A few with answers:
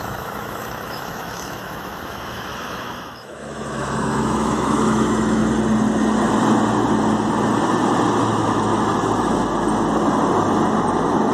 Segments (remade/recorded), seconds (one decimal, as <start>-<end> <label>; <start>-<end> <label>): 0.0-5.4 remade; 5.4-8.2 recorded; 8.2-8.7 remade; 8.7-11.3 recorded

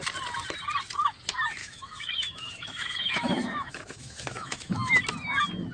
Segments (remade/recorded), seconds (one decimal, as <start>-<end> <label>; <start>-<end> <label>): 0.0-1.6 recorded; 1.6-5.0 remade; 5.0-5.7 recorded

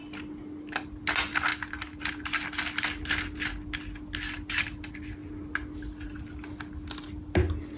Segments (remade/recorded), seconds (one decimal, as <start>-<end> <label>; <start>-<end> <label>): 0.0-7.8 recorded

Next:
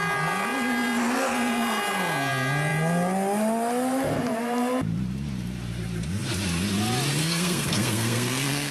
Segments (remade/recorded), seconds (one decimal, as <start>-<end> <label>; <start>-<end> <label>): 0.0-7.2 recorded; 7.2-8.7 remade

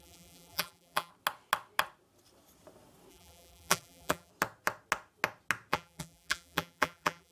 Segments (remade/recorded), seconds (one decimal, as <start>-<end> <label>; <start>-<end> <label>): 0.0-1.1 remade; 1.1-3.1 recorded; 3.1-4.3 remade; 4.3-5.7 recorded; 5.7-7.3 remade

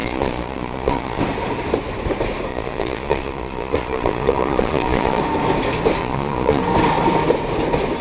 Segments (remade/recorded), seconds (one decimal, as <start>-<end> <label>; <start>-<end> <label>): 0.0-1.2 remade; 1.2-2.5 recorded; 2.5-5.2 remade; 5.2-6.0 recorded; 6.0-6.6 remade; 6.6-8.0 recorded

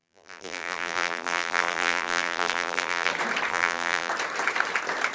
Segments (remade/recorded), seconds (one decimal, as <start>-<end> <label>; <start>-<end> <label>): 0.0-3.1 remade; 3.1-3.5 recorded; 3.5-4.1 remade; 4.1-5.1 recorded